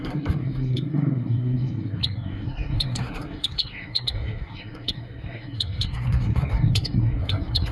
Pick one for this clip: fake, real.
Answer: fake